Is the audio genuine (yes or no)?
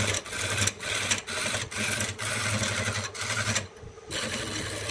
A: yes